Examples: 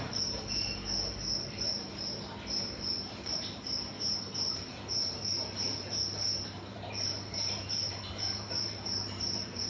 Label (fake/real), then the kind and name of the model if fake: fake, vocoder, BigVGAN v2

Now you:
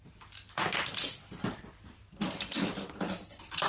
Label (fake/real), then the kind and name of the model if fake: fake, vocoder, BigVGAN v2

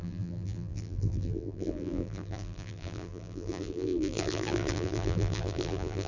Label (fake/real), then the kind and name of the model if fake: fake, vocoder, BigVGAN v2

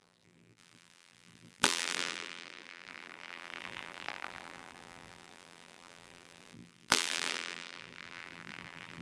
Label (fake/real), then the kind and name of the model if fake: fake, vocoder, BigVGAN v2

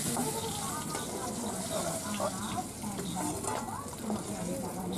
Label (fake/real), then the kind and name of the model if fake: real